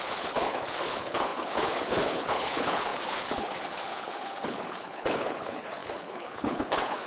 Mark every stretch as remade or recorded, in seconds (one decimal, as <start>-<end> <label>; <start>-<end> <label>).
0.0-7.1 remade